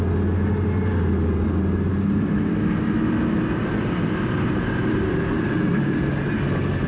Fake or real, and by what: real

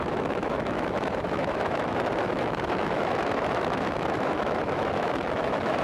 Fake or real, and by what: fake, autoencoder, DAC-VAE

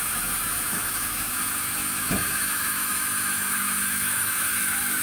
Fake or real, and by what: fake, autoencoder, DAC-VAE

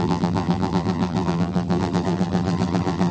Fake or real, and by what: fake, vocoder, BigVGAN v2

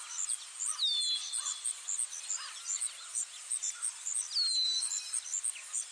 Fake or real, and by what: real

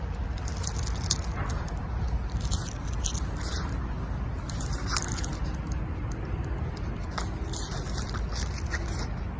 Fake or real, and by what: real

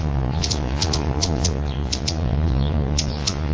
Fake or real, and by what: fake, vocoder, Vocos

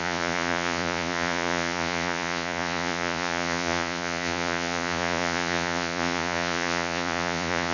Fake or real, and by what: fake, vocoder, Vocos